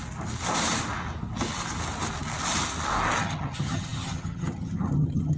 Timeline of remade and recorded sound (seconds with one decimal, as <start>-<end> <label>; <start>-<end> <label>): 0.0-3.2 recorded; 3.2-5.4 remade